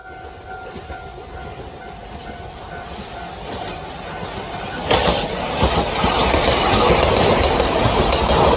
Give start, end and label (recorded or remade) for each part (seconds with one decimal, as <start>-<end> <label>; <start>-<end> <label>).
0.0-8.6 recorded